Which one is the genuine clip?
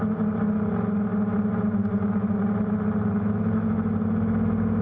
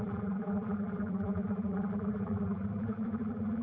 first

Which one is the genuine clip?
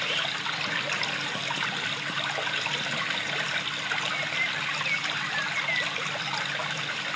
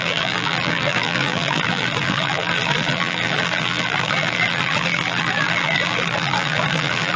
first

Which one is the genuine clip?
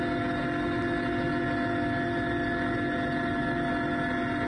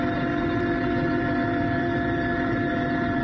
first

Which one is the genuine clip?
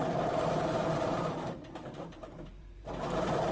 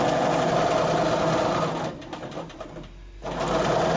second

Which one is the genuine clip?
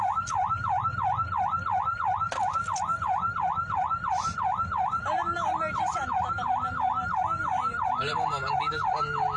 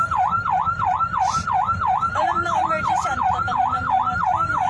first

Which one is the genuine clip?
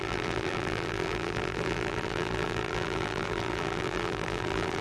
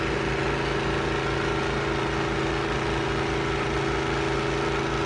second